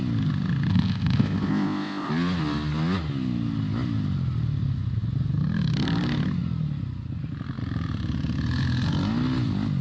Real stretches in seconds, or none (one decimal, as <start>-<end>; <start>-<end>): 0.0-0.7; 2.1-9.8